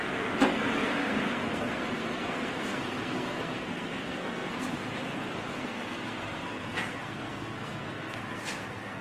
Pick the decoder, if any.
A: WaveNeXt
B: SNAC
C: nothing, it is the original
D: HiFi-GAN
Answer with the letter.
B